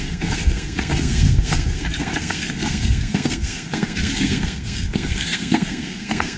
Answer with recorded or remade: remade